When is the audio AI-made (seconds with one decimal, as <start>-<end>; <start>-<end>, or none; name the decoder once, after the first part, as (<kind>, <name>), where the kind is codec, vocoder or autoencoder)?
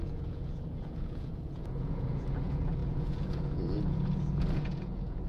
0.0-5.3 (vocoder, Vocos)